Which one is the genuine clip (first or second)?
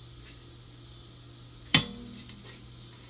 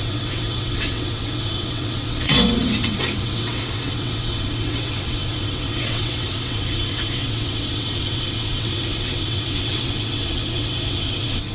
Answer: first